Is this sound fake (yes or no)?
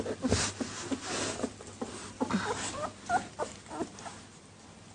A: no